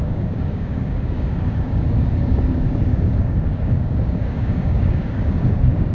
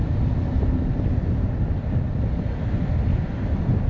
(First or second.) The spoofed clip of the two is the first